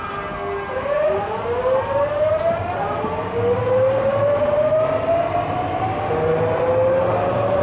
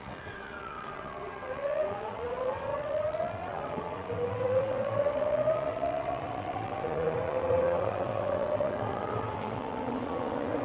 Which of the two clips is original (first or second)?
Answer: first